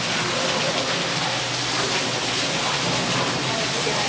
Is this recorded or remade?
recorded